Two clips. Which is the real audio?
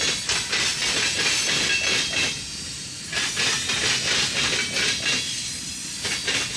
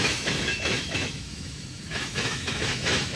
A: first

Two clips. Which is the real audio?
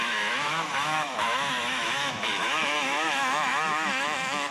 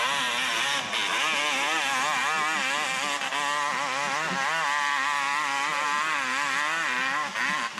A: second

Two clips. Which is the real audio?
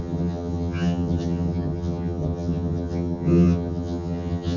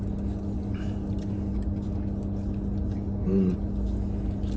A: second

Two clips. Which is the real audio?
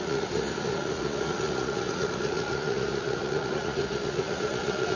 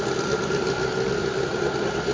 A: second